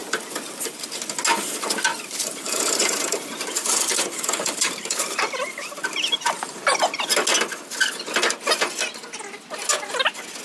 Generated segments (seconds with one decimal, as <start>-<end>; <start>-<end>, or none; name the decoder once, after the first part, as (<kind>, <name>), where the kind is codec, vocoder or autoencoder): 1.9-6.3 (vocoder, BigVGAN v2)